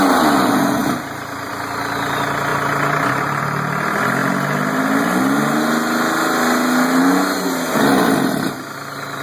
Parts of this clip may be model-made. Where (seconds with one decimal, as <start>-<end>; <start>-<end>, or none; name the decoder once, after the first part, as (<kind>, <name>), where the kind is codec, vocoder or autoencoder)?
none